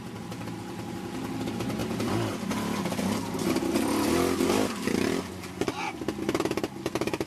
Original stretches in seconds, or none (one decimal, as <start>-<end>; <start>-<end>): 0.0-7.3